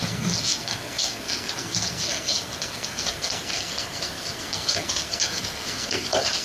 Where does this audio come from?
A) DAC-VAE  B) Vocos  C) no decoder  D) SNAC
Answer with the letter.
D